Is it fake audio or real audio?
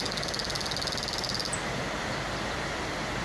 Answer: real